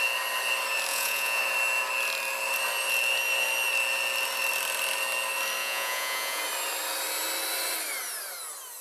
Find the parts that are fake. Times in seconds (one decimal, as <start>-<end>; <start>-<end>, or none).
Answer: 0.9-1.4; 5.6-6.4